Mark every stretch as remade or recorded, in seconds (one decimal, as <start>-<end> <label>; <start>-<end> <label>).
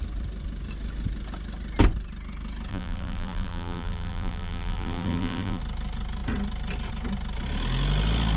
0.0-2.7 recorded; 2.7-5.6 remade; 5.6-8.4 recorded